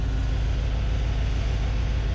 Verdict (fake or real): real